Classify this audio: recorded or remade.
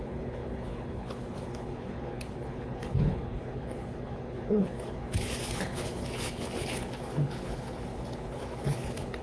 remade